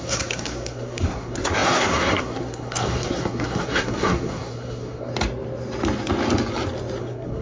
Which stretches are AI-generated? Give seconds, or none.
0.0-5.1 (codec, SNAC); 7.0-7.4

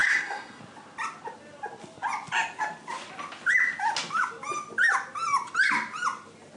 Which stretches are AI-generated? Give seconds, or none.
0.0-0.6 (codec, SNAC)

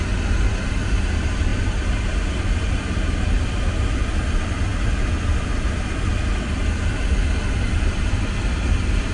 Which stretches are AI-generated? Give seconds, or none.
none